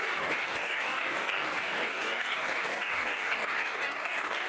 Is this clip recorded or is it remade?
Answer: remade